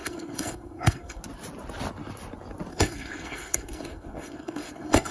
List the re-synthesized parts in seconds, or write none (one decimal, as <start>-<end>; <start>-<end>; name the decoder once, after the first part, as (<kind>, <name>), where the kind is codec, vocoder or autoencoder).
0.0-1.2 (codec, SNAC); 2.7-5.1